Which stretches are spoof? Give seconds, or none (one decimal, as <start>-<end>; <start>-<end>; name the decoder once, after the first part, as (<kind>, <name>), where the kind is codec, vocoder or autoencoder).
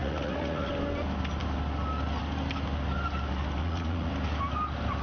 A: 0.0-0.7 (vocoder, Vocos); 3.6-4.1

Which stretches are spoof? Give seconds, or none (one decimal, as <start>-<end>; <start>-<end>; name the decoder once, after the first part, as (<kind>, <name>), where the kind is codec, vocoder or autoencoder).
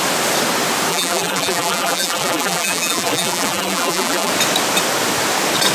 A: 0.9-4.3 (vocoder, BigVGAN v2)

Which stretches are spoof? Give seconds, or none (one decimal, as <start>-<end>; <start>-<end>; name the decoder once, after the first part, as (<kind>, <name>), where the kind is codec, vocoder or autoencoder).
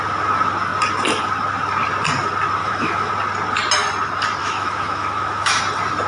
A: 2.6-3.1 (autoencoder, DAC-VAE); 4.4-5.6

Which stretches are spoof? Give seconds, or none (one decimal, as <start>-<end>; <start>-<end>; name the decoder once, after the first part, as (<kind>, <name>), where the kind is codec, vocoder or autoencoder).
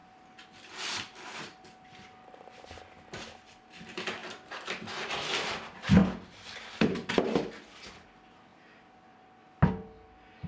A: 0.0-2.8 (vocoder, BigVGAN v2); 6.0-7.2